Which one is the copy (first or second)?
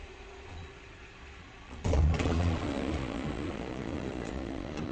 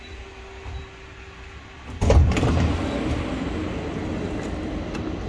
first